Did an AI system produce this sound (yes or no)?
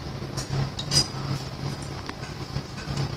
no